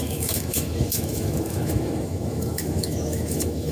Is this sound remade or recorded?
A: remade